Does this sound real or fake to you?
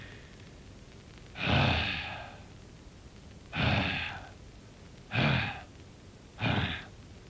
real